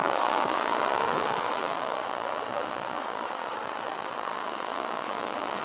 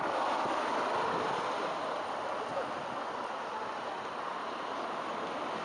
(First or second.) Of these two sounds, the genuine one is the second